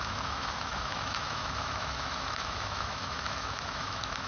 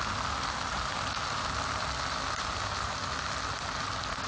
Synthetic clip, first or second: first